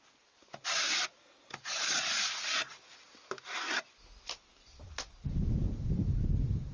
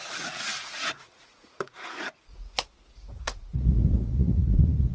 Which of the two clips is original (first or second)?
first